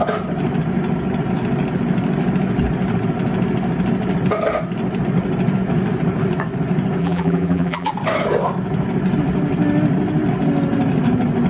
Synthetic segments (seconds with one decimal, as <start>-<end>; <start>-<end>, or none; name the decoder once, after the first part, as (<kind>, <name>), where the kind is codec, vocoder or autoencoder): 7.0-7.9 (vocoder, BigVGAN v2)